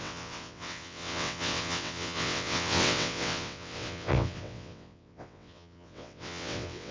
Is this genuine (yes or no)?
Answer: no